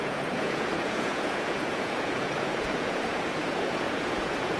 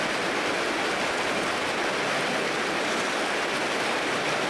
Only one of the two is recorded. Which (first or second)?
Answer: second